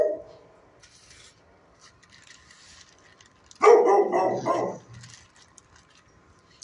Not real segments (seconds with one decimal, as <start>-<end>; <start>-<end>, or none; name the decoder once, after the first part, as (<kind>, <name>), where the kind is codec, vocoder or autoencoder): none